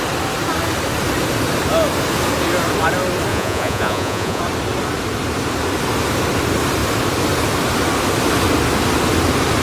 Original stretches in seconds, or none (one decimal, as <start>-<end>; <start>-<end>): 0.0-3.3; 4.4-9.6